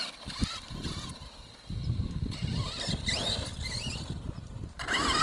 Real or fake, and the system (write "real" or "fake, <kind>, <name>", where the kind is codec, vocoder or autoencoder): real